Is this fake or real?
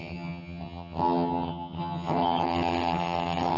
fake